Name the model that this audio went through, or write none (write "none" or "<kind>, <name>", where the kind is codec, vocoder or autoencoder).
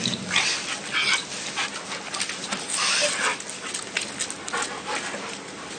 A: none